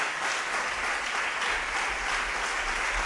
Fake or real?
real